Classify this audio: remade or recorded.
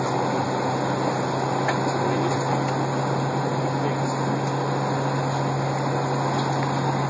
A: recorded